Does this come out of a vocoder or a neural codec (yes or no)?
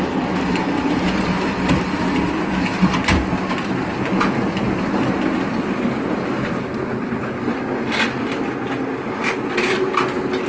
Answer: no